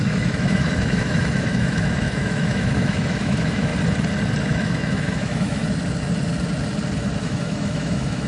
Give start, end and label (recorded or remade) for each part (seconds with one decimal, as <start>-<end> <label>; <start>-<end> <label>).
0.0-3.7 remade; 3.7-4.4 recorded; 4.4-5.6 remade; 5.6-7.2 recorded; 7.2-8.3 remade

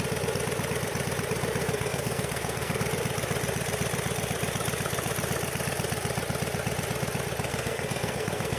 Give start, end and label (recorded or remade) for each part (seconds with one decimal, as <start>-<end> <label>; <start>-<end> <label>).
0.0-1.6 recorded; 1.6-2.8 remade; 2.8-7.5 recorded; 7.5-8.6 remade

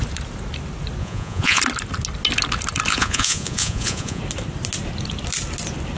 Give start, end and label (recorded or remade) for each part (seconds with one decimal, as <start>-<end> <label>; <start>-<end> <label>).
0.0-1.0 recorded; 1.0-1.6 remade; 1.6-2.9 recorded; 2.9-4.2 remade; 4.2-6.0 recorded

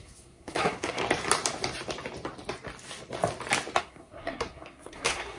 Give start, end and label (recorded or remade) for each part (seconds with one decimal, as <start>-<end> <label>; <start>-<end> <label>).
0.0-1.0 remade; 1.0-3.8 recorded; 3.8-5.4 remade